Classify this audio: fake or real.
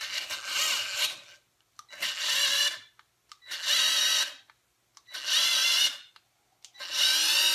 real